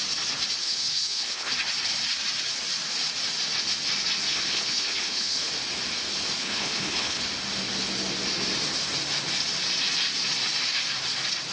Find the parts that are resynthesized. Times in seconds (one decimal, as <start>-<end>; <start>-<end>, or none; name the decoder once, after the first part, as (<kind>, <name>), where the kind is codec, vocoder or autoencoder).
0.6-1.5 (codec, HILCodec); 4.3-5.5; 6.4-7.2